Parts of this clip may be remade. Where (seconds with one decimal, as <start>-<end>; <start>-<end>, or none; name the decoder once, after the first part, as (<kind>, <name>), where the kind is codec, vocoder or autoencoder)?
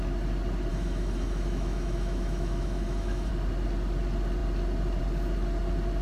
0.7-3.3 (autoencoder, DAC-VAE)